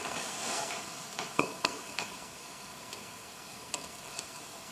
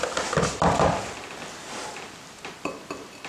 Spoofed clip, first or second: first